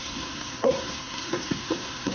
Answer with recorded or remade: remade